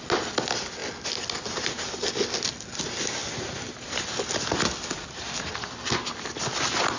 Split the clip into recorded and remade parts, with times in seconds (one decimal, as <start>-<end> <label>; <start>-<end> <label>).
0.0-7.0 recorded